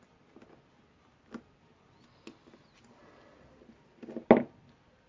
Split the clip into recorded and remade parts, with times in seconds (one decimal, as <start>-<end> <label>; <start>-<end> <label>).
0.0-5.1 recorded